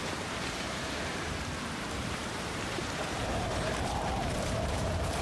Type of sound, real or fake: fake